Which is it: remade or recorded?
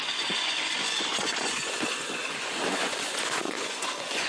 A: remade